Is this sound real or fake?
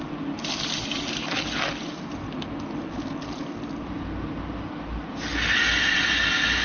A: real